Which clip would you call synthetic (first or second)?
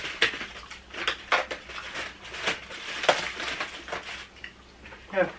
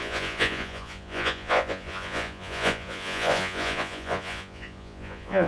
second